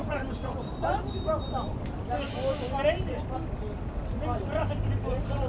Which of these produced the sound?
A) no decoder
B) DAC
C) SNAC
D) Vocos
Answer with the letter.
A